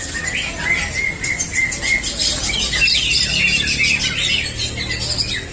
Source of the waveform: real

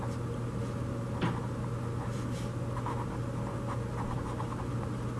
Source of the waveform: real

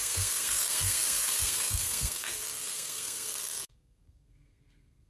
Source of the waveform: fake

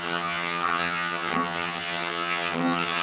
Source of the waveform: fake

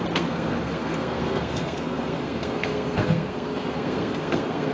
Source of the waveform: fake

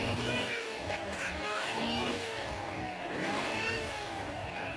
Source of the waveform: fake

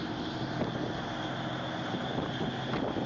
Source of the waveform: real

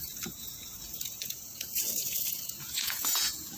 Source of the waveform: fake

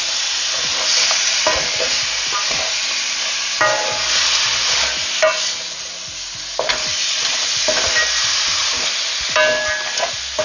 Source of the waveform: real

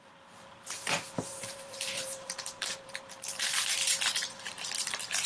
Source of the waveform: fake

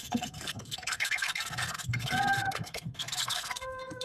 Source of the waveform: fake